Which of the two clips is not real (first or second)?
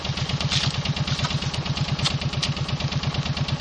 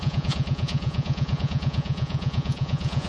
second